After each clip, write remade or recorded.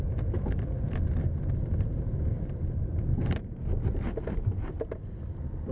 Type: remade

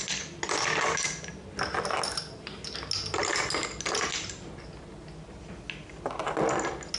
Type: recorded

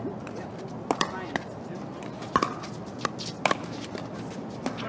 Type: recorded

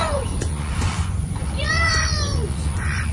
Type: remade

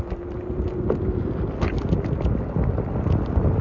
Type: recorded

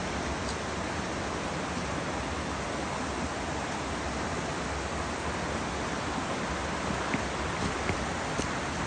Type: recorded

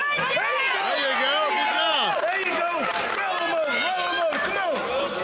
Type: recorded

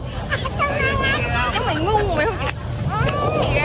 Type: recorded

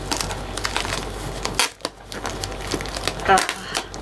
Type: recorded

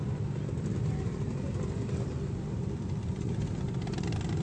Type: recorded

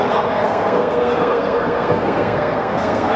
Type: remade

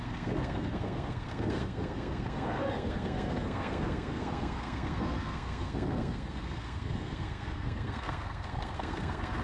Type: remade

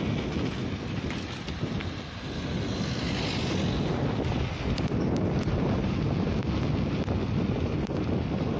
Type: recorded